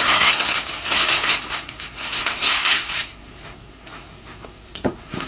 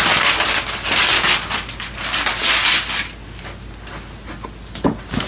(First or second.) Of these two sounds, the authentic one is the second